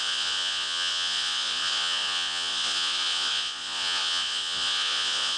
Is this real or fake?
fake